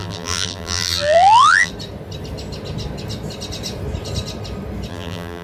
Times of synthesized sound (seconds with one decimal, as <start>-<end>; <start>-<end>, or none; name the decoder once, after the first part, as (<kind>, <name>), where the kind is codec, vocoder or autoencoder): 0.0-1.7 (vocoder, BigVGAN v2); 4.9-5.4